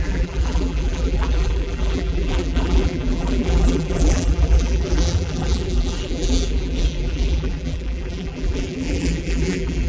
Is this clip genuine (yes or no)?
no